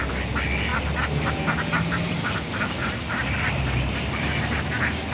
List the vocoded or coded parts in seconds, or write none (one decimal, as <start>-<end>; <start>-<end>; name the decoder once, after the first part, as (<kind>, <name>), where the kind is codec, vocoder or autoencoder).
none